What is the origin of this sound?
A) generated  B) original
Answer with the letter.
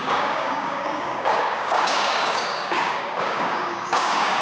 A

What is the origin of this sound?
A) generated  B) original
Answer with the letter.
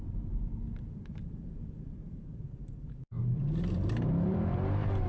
A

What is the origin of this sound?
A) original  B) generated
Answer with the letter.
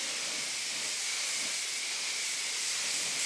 A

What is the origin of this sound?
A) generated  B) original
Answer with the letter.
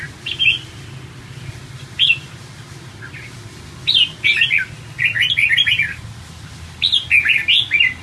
B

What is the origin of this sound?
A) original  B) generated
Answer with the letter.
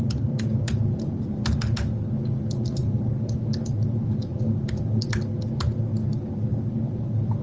A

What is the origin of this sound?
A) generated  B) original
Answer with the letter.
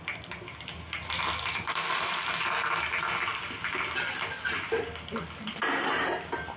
B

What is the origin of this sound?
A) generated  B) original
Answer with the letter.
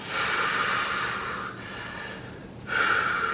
A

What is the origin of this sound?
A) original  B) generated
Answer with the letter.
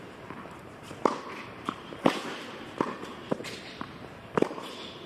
B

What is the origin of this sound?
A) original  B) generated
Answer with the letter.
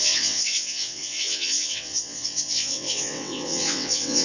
B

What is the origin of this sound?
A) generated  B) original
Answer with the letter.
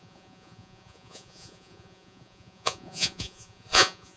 A